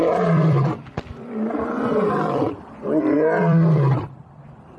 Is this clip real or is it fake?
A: fake